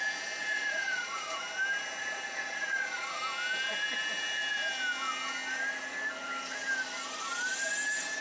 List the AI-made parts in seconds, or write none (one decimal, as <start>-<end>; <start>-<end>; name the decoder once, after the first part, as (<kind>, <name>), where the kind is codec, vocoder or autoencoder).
0.4-1.4 (vocoder, Vocos); 2.0-3.2